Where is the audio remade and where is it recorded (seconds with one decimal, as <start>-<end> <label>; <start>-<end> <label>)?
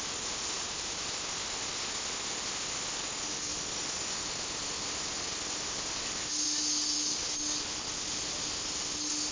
0.0-9.3 recorded